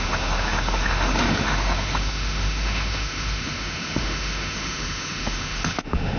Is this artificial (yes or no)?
yes